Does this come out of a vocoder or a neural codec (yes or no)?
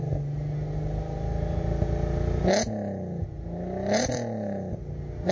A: no